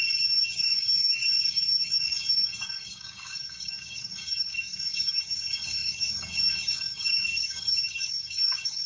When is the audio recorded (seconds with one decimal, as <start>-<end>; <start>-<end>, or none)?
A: none